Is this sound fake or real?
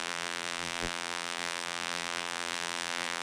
fake